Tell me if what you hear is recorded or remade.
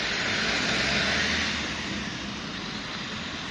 recorded